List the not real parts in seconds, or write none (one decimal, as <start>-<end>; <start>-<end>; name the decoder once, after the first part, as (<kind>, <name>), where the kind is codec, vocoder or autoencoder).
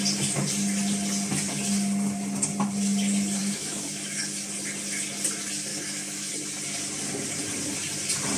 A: 3.4-4.2 (autoencoder, DAC-VAE); 5.7-6.3